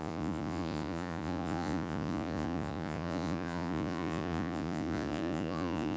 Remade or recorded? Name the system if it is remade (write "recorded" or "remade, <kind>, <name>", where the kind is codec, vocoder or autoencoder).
remade, vocoder, Vocos